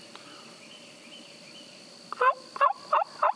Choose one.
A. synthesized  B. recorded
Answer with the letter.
B